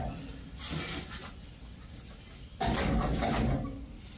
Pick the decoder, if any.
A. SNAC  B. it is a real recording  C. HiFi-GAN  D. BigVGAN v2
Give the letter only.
B